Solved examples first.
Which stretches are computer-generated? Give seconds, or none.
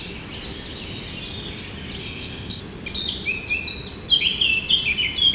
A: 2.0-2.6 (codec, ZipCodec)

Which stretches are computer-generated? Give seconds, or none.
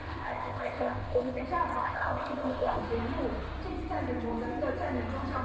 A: 0.0-1.4 (codec, ZipCodec); 1.8-2.8